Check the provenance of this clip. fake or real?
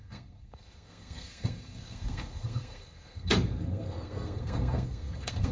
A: fake